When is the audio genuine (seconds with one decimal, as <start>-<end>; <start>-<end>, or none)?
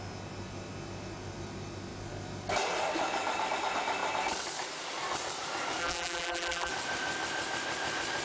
0.0-5.8; 6.7-8.2